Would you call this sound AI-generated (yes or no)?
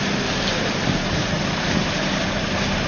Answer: no